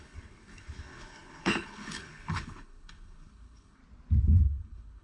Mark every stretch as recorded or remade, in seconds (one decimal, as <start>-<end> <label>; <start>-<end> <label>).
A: 0.0-3.8 remade; 3.8-4.4 recorded; 4.4-5.0 remade